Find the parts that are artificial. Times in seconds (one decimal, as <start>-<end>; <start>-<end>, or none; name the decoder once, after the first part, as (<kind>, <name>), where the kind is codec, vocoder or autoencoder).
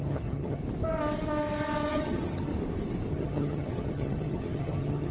0.0-0.6 (vocoder, HiFi-GAN); 1.9-2.5; 3.1-5.1